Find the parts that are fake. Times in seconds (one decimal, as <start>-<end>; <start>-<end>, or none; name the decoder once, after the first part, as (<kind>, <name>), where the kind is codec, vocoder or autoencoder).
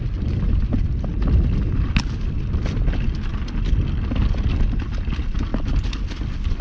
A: none